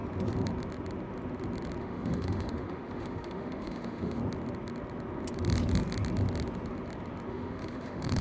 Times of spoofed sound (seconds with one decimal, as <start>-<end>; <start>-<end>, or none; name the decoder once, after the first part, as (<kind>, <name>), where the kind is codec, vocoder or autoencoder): 1.8-4.2 (autoencoder, DAC-VAE); 7.3-8.2